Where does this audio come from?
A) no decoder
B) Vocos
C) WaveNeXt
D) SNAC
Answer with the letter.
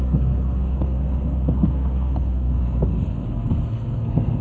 D